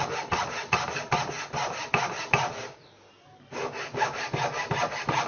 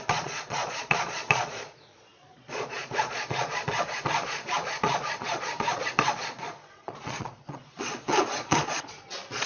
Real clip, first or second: first